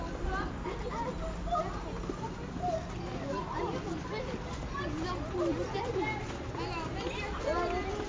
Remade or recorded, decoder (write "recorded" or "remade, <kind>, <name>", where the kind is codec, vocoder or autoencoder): recorded